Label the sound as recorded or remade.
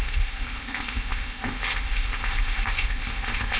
remade